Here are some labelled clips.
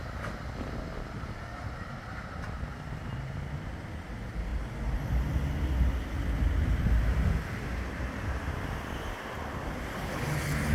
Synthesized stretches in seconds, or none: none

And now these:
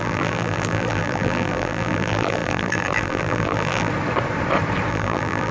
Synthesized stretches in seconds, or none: 0.0-3.9; 4.9-5.5

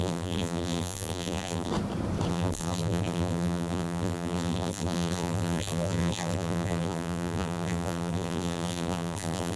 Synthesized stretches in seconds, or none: 0.0-1.7; 2.3-9.6

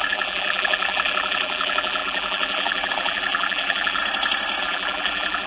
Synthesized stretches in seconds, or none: 0.0-4.0; 4.6-5.5

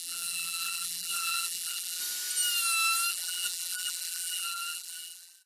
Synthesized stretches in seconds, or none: 0.0-2.0; 3.1-5.5

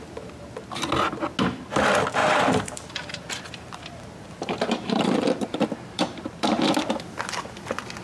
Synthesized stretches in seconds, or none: 2.2-6.7

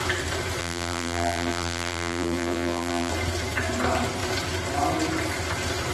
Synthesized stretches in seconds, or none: 0.6-3.1